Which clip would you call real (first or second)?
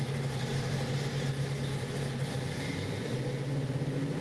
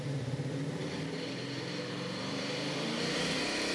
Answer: first